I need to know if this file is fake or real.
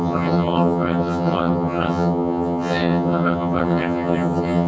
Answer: fake